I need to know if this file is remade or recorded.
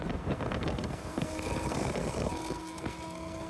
remade